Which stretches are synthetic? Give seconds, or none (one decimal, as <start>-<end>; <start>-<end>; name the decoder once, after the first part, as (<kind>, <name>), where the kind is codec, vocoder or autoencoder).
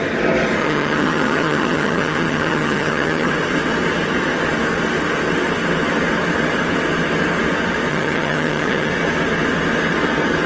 0.6-3.3 (vocoder, HiFi-GAN); 7.9-8.9